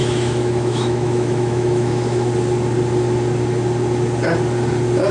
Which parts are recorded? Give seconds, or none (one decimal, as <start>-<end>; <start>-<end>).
2.3-5.1